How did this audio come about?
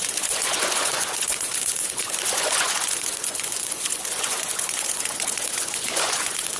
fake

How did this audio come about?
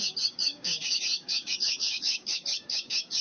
fake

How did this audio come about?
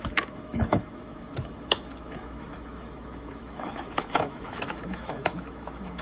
fake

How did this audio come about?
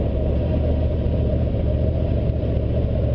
fake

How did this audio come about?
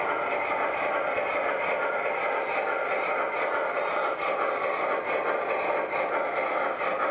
real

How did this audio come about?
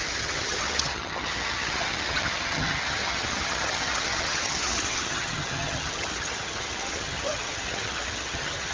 fake